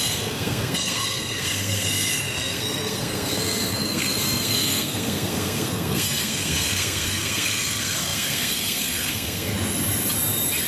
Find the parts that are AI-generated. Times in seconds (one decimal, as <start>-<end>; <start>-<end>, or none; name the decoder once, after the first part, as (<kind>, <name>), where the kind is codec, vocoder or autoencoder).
0.0-9.5 (codec, SNAC)